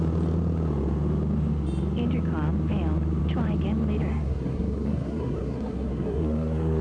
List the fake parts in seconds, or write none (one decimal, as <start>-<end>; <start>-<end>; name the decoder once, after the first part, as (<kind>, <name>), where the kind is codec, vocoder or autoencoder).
4.1-6.8 (codec, SNAC)